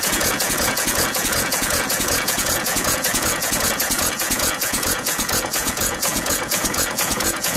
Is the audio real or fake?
fake